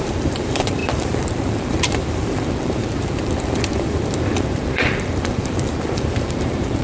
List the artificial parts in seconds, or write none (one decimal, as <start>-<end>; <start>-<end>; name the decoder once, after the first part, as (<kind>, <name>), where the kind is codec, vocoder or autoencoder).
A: 0.0-6.8 (vocoder, BigVGAN v2)